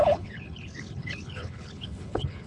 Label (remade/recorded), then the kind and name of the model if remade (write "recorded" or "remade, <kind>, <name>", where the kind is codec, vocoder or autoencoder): remade, codec, HILCodec